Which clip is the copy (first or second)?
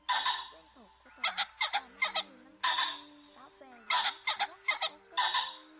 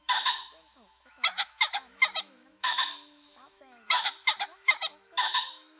second